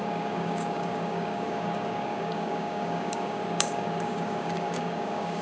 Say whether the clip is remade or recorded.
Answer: remade